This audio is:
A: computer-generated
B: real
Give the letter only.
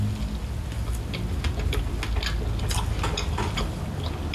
B